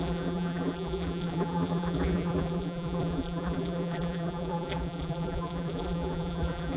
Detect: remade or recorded remade